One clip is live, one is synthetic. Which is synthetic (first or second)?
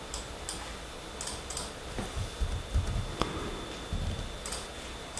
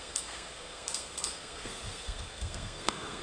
second